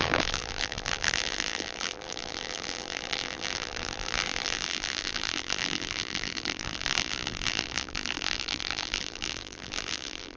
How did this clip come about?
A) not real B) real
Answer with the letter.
A